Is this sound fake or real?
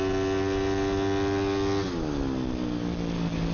real